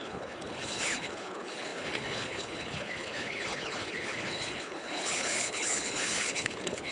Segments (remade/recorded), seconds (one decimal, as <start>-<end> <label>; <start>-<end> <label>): 0.0-6.9 remade